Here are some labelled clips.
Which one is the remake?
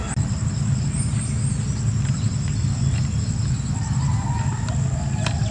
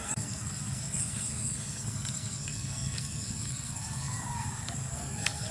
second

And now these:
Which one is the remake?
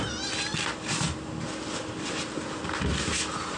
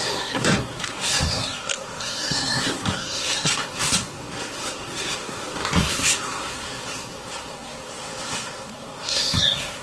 second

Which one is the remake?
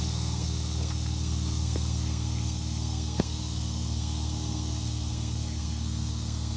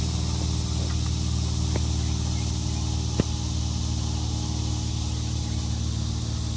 first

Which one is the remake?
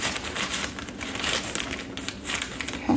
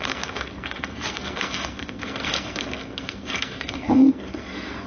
second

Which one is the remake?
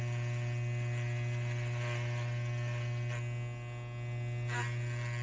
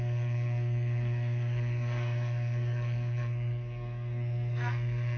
second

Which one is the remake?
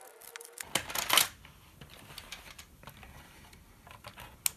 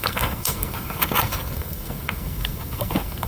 second